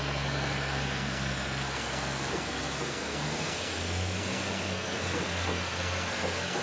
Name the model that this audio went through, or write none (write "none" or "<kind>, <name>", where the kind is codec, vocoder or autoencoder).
codec, SNAC